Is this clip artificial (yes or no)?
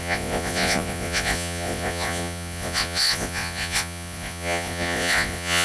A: yes